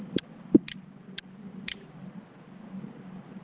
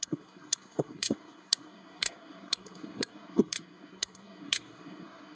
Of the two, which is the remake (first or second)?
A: second